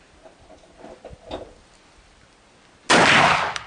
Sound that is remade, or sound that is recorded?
recorded